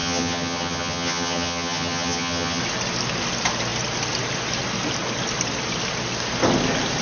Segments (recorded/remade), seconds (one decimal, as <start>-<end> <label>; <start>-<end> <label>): 0.0-2.6 remade; 2.6-7.0 recorded